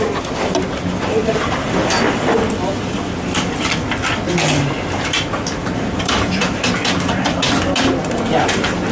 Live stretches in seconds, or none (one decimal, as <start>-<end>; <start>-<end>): 0.0-1.2; 2.5-5.6; 7.4-8.9